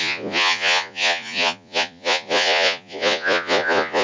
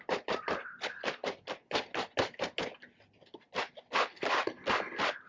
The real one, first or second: second